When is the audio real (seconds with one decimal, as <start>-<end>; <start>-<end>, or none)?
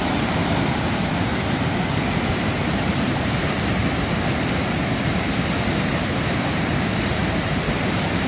1.3-2.3; 3.8-7.2